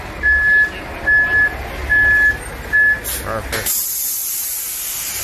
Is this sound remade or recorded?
recorded